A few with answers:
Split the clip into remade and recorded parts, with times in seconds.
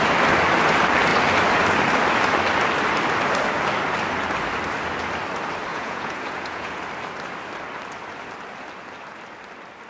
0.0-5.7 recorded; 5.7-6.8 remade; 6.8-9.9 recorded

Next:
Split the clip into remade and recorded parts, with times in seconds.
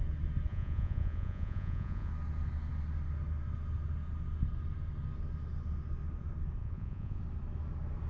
0.0-0.5 recorded; 0.5-2.1 remade; 2.1-6.6 recorded; 6.6-7.2 remade; 7.2-8.1 recorded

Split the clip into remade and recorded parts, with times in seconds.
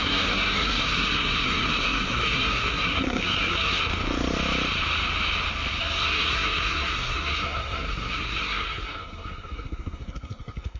0.0-3.9 remade; 3.9-5.8 recorded; 5.8-10.8 remade